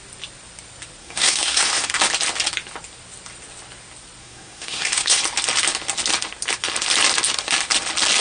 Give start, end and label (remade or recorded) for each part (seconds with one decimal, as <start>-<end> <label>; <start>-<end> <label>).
0.0-1.0 recorded; 1.0-2.0 remade; 2.0-4.2 recorded; 4.2-5.2 remade; 5.2-8.2 recorded